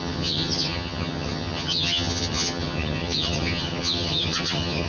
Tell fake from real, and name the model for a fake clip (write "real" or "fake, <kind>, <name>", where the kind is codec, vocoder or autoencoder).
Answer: fake, vocoder, HiFi-GAN